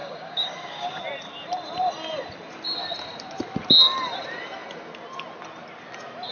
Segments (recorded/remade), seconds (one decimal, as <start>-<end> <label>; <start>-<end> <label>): 0.0-1.0 remade; 1.0-6.3 recorded